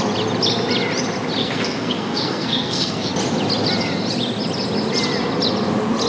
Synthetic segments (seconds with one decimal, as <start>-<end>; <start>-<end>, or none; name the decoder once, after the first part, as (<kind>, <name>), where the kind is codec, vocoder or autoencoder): 1.4-3.1 (codec, SNAC)